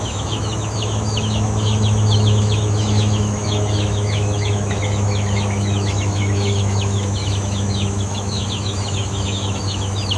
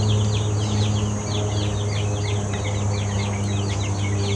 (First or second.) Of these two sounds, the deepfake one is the first